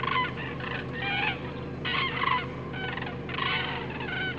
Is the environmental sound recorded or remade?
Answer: recorded